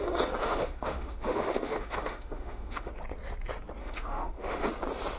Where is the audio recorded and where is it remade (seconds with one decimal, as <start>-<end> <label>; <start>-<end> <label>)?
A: 0.0-0.4 recorded; 0.4-2.9 remade; 2.9-3.8 recorded; 3.8-4.7 remade; 4.7-5.2 recorded